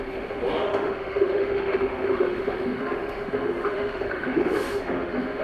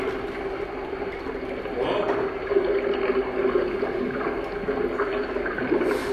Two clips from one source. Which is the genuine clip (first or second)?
second